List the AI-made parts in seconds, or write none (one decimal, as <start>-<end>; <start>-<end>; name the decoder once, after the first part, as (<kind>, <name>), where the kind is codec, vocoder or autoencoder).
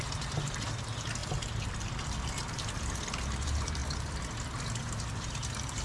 0.0-3.8 (vocoder, BigVGAN v2); 4.8-5.8